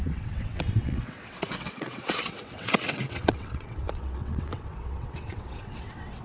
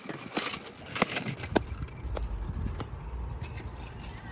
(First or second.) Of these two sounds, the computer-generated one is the first